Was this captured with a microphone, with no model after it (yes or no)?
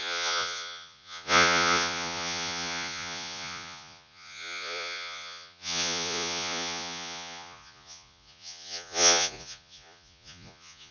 no